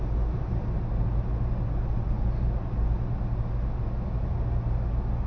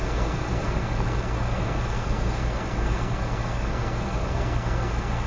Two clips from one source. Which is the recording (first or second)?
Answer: first